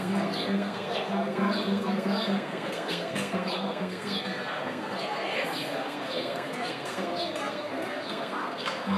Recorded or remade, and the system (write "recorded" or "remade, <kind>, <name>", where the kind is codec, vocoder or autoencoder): remade, codec, SNAC